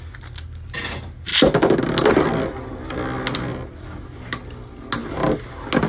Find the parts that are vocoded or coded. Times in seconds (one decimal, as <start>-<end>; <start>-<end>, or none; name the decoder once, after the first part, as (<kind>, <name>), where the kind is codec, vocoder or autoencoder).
none